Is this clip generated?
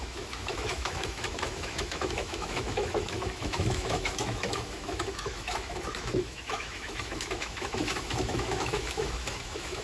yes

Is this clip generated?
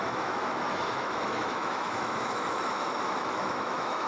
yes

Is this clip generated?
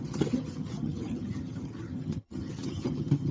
yes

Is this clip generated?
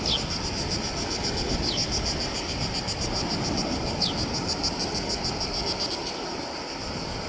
no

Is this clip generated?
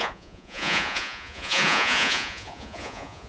yes